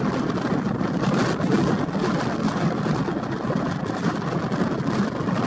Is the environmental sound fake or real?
real